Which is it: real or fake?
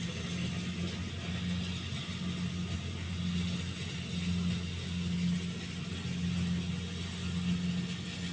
real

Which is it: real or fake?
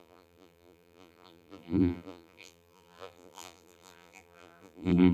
fake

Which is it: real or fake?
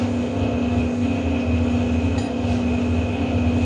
real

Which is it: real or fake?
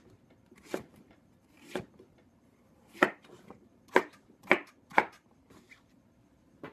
fake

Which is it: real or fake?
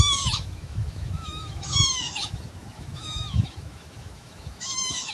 fake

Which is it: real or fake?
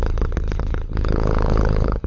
fake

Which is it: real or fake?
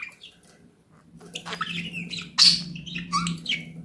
real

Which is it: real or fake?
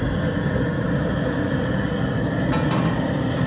real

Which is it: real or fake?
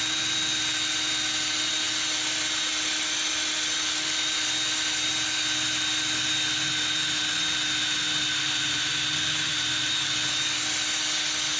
real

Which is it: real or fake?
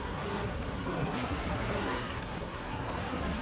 fake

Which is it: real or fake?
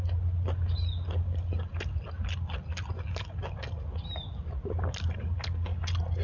real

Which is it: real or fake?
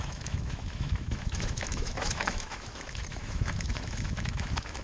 fake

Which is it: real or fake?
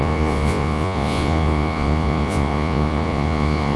fake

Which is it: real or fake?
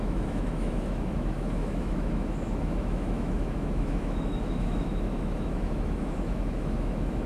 fake